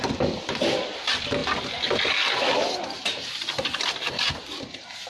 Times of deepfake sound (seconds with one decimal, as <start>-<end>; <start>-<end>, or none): none